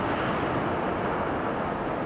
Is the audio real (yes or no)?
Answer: yes